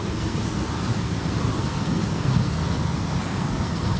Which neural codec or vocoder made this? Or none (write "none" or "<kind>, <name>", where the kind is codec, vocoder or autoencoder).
codec, SNAC